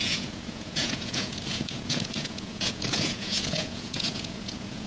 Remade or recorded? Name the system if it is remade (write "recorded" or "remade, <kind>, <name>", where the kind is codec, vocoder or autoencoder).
remade, vocoder, Vocos